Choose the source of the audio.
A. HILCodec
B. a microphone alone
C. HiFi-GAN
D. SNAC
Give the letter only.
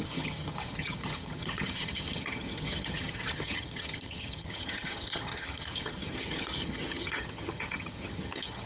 C